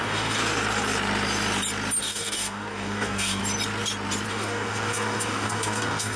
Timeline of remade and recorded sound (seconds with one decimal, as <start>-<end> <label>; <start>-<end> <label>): 0.0-0.4 remade; 0.4-2.0 recorded; 2.0-3.4 remade; 3.4-4.3 recorded; 4.3-6.2 remade